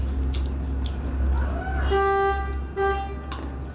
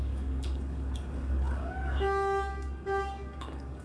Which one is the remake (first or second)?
second